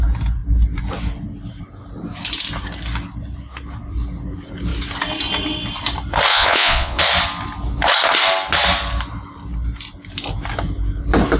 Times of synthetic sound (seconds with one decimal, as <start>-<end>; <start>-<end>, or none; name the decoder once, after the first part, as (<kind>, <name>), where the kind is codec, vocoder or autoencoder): 6.3-7.0 (vocoder, Vocos)